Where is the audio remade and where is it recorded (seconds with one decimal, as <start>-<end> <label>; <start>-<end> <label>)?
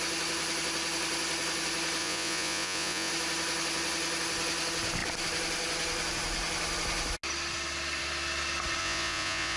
0.0-2.0 recorded; 2.0-3.1 remade; 3.1-8.8 recorded; 8.8-9.6 remade